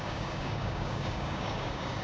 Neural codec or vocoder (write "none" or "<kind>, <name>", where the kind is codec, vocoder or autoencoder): codec, DAC